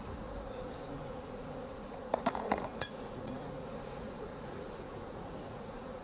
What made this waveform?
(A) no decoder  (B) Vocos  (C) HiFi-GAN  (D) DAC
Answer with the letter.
B